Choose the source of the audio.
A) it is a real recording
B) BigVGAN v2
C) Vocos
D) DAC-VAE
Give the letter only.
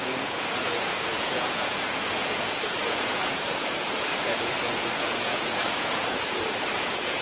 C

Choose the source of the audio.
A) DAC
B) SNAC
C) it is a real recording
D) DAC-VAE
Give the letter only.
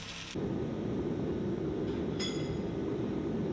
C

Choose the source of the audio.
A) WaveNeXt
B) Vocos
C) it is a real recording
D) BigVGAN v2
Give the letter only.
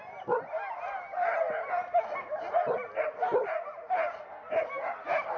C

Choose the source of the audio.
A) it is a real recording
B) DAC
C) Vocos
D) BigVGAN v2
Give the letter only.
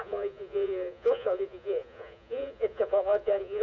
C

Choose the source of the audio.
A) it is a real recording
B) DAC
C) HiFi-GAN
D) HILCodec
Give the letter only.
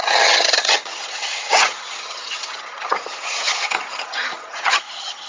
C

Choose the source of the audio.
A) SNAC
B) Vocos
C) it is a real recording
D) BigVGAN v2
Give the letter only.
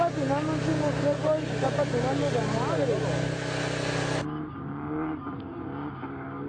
C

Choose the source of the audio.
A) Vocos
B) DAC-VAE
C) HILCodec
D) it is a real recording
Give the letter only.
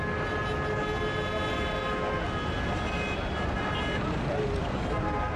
D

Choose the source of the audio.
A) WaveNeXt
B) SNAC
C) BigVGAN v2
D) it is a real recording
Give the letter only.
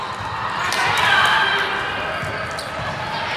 D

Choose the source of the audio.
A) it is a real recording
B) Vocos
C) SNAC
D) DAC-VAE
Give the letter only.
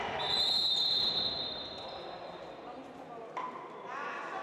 A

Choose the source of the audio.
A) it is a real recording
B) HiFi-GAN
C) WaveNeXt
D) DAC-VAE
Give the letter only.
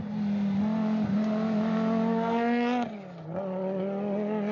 A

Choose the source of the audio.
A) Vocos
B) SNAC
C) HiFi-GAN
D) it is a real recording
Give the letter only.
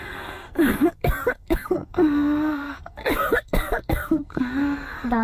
B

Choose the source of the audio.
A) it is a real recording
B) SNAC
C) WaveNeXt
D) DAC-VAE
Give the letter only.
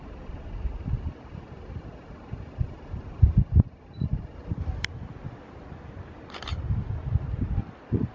A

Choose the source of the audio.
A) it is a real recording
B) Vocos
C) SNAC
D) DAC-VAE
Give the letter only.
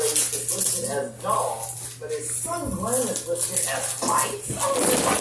A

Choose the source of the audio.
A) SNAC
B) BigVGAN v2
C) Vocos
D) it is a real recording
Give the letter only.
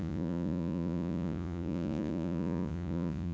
C